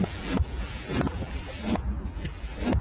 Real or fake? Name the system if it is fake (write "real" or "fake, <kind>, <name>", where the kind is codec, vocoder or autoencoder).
fake, vocoder, BigVGAN v2